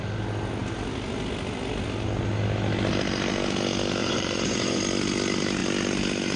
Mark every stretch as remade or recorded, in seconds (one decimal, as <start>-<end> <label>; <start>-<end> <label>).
0.0-4.0 recorded; 4.0-4.8 remade; 4.8-6.4 recorded